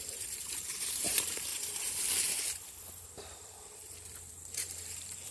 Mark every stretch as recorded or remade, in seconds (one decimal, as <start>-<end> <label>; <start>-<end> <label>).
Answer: 0.0-1.5 remade; 1.5-3.1 recorded; 3.1-5.3 remade